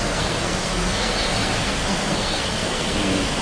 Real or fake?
fake